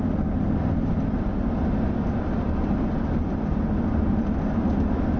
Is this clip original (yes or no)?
yes